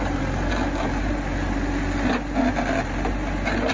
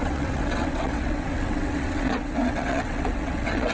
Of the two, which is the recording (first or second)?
first